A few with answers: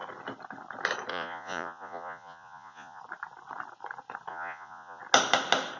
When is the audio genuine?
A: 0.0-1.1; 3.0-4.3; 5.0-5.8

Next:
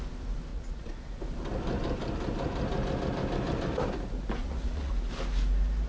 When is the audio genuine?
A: 0.0-0.5; 1.2-4.4; 4.9-5.9

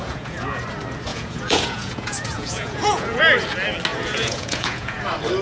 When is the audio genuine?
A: 0.6-1.1; 3.2-3.9; 5.0-5.4